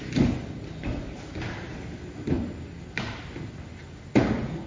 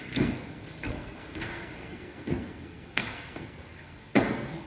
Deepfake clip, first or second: second